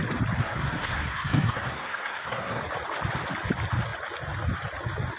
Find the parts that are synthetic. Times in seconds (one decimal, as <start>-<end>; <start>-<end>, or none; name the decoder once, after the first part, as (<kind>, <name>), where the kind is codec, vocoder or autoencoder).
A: 0.4-2.6 (codec, SNAC)